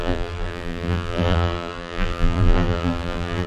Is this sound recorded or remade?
remade